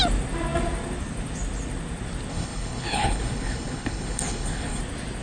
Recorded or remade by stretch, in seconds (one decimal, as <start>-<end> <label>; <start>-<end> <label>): 0.0-2.3 recorded; 2.3-4.8 remade; 4.8-5.2 recorded